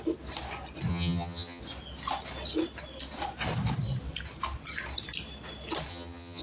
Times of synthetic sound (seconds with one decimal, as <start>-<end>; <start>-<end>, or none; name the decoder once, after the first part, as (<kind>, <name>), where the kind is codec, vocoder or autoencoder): 0.9-1.6 (vocoder, HiFi-GAN); 5.9-6.4